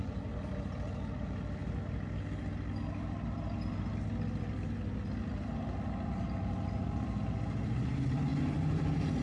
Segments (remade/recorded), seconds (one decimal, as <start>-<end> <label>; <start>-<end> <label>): 0.0-9.2 recorded